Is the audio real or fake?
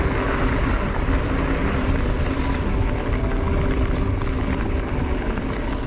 real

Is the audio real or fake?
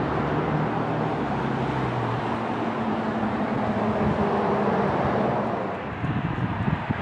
real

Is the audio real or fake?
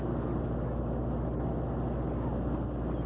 real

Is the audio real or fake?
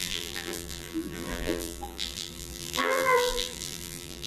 fake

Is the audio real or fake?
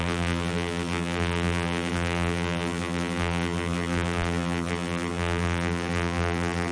fake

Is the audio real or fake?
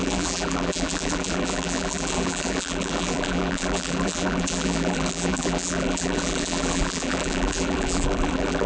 fake